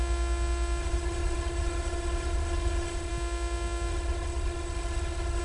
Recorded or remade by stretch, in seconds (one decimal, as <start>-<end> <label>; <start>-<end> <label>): 0.0-0.8 recorded; 0.8-3.1 remade; 3.1-3.9 recorded; 3.9-5.4 remade